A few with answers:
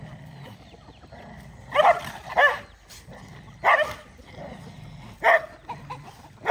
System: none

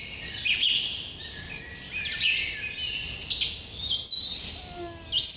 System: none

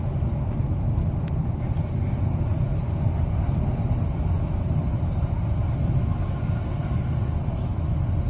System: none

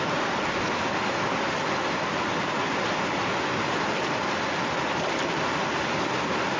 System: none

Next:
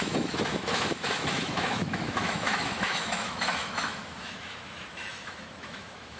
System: autoencoder, DAC-VAE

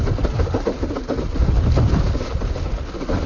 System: none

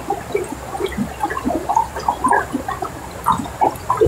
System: none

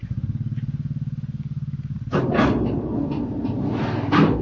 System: none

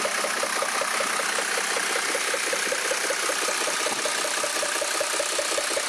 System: none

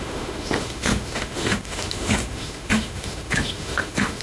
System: autoencoder, DAC-VAE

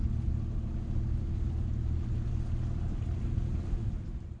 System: none